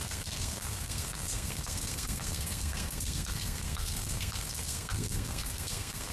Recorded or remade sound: remade